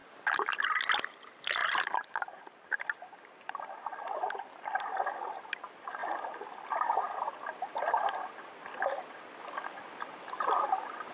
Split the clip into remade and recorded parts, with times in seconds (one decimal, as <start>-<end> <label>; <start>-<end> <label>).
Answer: 0.0-0.6 remade; 0.6-1.6 recorded; 1.6-5.0 remade; 5.0-11.1 recorded